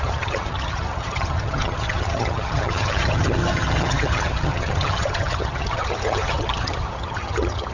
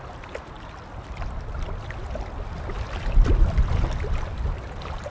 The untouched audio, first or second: second